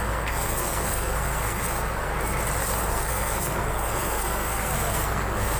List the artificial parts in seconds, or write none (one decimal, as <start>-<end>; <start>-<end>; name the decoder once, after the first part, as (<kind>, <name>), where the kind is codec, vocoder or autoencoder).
0.0-2.1 (codec, SNAC); 2.9-5.6

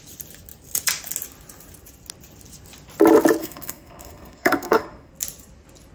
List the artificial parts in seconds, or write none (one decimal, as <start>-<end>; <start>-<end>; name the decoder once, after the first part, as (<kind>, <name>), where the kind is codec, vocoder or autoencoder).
3.4-5.1 (codec, SNAC)

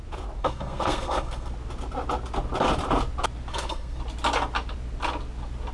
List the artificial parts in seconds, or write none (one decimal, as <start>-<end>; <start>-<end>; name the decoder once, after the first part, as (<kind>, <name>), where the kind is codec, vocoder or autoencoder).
0.4-1.5 (codec, SNAC); 3.5-4.0

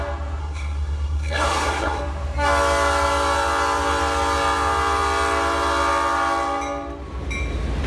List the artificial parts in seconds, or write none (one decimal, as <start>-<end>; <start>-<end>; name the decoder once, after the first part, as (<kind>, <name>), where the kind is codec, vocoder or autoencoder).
0.4-2.0 (codec, SNAC)

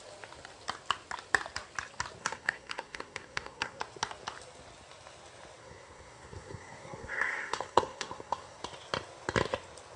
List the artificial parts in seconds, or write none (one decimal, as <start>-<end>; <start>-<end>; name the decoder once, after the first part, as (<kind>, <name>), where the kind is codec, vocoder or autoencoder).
2.2-3.8 (codec, SNAC); 5.6-8.6